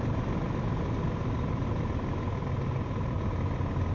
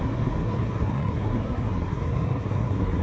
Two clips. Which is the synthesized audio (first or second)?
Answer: second